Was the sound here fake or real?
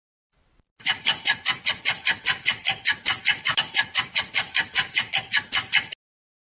real